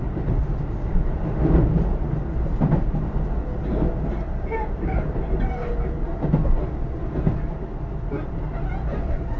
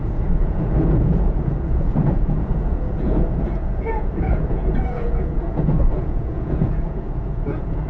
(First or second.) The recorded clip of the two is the first